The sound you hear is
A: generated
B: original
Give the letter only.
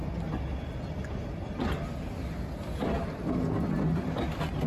B